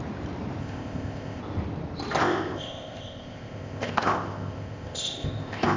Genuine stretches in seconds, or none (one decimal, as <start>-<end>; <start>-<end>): 0.0-0.6; 1.4-2.2

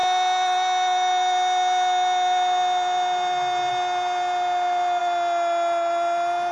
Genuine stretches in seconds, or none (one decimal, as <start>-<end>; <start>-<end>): 0.0-6.5

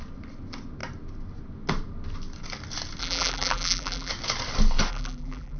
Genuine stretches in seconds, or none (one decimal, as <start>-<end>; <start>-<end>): 0.0-3.0; 4.1-4.9